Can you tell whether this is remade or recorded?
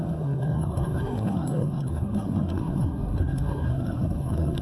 remade